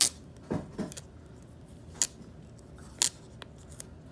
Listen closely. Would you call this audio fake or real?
real